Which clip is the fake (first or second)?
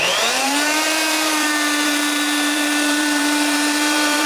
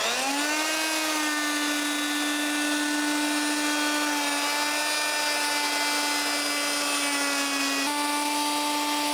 first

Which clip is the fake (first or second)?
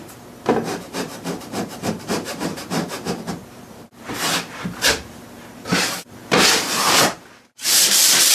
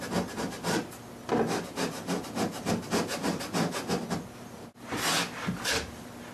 first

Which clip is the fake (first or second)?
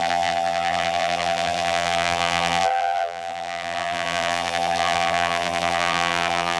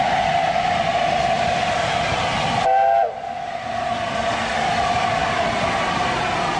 first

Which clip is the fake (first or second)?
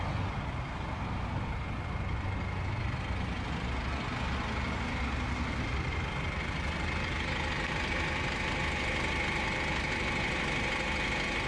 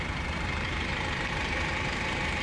second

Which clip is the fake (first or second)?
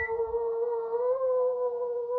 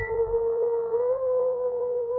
second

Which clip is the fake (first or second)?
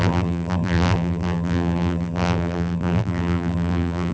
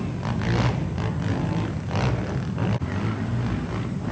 first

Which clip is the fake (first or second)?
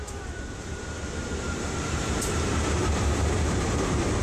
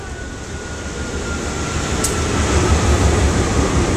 first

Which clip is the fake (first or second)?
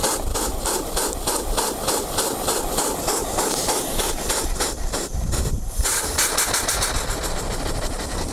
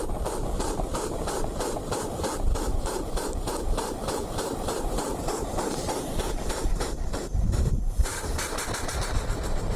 second